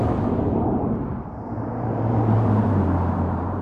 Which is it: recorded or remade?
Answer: remade